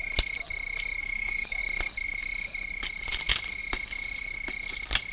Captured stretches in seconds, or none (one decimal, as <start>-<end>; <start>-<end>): 0.0-1.0; 1.6-5.1